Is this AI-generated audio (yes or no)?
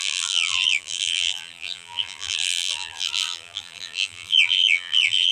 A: yes